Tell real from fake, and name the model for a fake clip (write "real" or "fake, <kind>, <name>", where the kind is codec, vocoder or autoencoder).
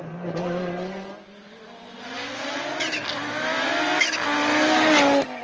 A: real